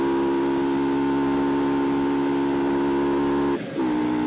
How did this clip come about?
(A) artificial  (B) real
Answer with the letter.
B